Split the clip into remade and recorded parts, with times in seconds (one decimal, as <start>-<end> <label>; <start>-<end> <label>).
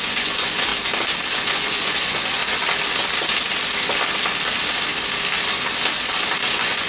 0.0-0.7 remade; 0.7-1.3 recorded; 1.3-2.4 remade; 2.4-6.5 recorded; 6.5-6.9 remade